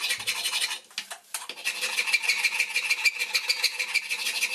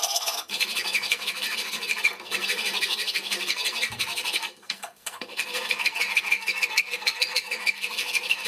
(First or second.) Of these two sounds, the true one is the first